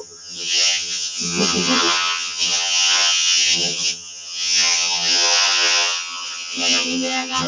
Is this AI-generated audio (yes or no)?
yes